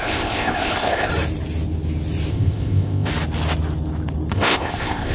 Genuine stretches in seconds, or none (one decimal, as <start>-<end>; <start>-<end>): 1.1-2.3; 3.1-4.3